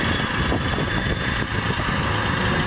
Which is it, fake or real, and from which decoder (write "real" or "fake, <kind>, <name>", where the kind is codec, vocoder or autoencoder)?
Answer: real